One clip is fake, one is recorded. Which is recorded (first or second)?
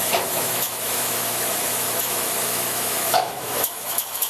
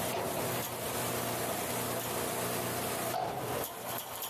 second